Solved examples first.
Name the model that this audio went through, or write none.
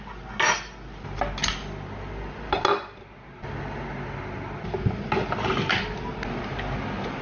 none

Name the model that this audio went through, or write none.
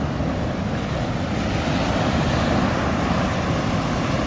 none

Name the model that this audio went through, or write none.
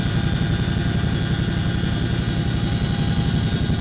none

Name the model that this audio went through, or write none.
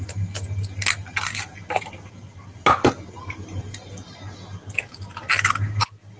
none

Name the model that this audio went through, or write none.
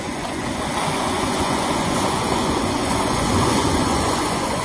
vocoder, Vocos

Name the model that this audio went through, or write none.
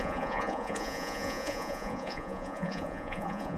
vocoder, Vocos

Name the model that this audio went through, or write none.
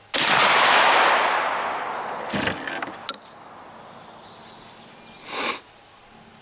none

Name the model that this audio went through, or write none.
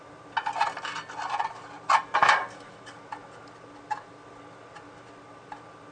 none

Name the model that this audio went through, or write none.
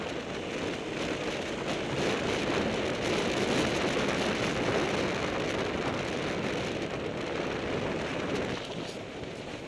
none